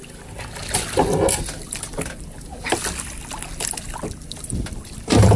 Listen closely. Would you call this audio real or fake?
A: real